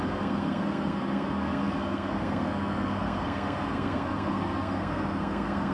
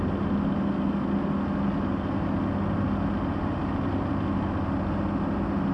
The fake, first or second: first